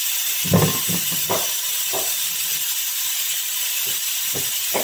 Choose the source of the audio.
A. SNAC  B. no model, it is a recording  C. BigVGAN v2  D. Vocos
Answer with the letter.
B